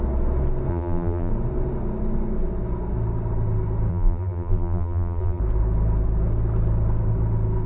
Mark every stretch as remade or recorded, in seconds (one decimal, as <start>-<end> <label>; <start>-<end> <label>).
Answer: 0.0-0.7 recorded; 0.7-1.3 remade; 1.3-3.9 recorded; 3.9-5.4 remade; 5.4-7.7 recorded